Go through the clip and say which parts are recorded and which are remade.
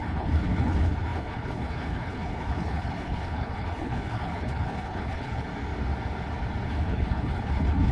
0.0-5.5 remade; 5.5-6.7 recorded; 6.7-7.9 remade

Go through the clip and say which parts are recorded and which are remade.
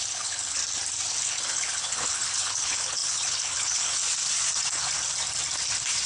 0.0-0.6 remade; 0.6-1.1 recorded; 1.1-4.0 remade; 4.0-6.1 recorded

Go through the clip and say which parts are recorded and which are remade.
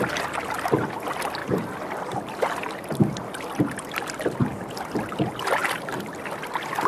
0.0-6.9 recorded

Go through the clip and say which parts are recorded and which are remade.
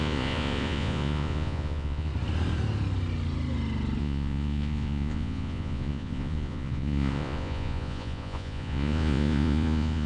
0.0-2.1 remade; 2.1-4.0 recorded; 4.0-10.1 remade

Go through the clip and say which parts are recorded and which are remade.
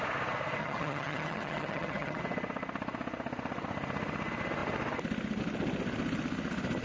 0.0-0.6 recorded; 0.6-2.2 remade; 2.2-6.8 recorded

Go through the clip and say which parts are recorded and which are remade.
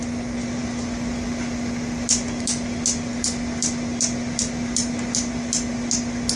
0.0-6.4 recorded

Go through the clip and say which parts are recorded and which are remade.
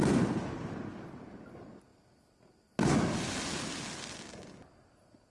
0.0-5.3 recorded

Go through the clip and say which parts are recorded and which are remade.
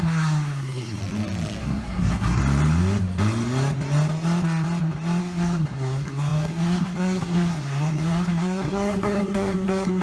0.0-1.0 remade; 1.0-1.6 recorded; 1.6-2.4 remade; 2.4-5.2 recorded; 5.2-10.0 remade